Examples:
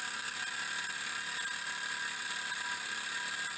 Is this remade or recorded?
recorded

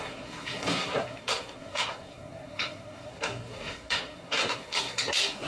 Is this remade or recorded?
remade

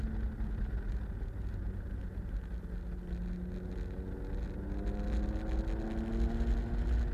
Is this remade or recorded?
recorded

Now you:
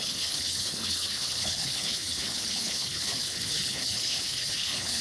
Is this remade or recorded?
remade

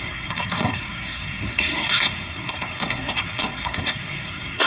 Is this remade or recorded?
remade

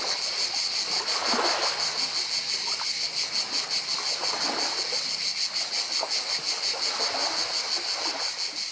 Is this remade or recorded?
recorded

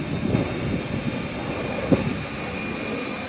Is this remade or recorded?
recorded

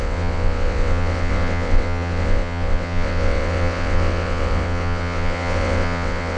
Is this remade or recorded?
remade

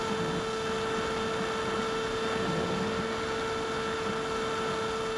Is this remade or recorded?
recorded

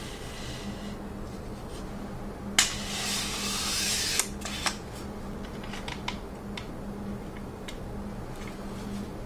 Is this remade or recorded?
recorded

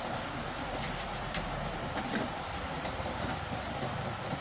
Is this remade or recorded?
recorded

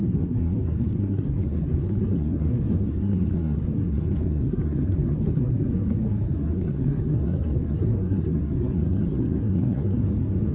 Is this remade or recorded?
remade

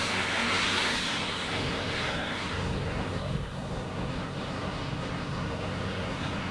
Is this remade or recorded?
remade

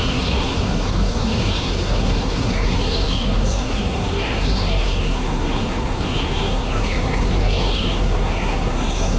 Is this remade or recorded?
remade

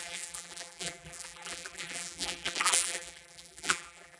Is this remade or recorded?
remade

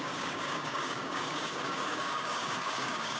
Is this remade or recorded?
remade